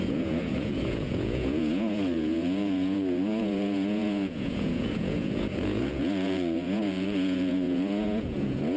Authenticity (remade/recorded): remade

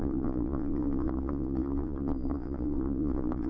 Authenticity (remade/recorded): remade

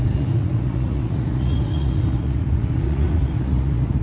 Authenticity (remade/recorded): remade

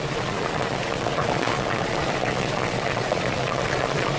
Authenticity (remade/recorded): remade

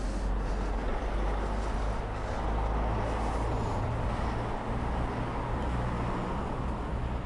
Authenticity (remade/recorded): recorded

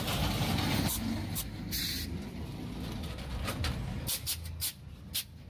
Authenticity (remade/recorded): recorded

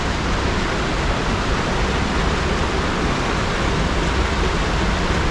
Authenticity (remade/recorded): recorded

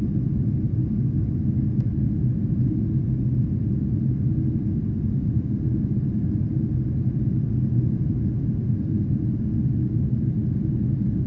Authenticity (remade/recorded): recorded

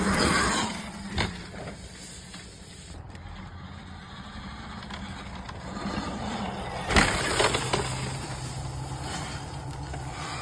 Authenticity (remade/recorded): recorded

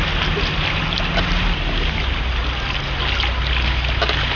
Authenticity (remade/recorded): recorded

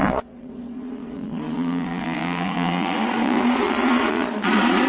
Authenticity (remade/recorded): remade